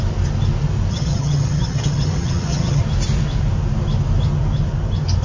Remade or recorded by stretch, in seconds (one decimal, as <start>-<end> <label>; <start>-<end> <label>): 0.0-0.9 recorded; 0.9-2.8 remade; 2.8-5.2 recorded